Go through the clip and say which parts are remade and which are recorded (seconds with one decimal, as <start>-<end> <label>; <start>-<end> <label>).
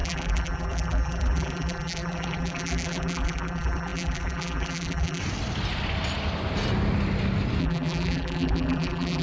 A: 0.0-5.2 remade; 5.2-7.6 recorded; 7.6-9.2 remade